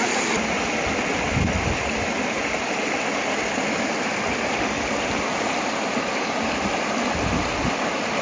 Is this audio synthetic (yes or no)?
no